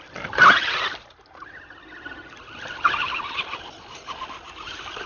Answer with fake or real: real